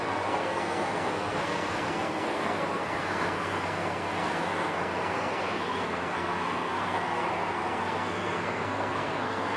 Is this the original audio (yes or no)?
no